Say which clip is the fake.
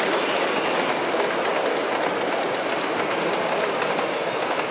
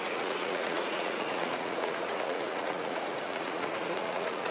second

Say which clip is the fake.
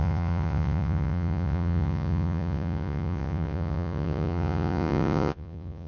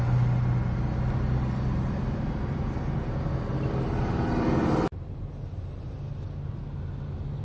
first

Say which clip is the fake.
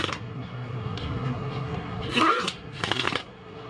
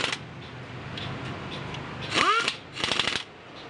first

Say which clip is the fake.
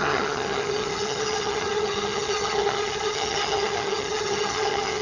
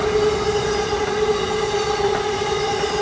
first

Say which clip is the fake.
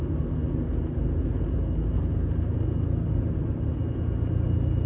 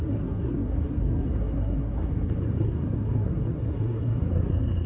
second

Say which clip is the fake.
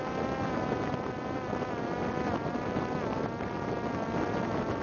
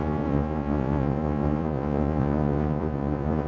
second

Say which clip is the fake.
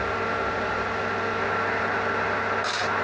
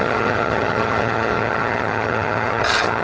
second